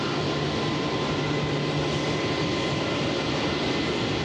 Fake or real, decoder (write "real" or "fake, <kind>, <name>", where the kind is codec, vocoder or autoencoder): real